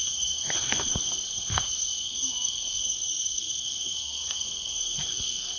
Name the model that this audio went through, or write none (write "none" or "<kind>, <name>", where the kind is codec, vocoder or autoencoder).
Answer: codec, SNAC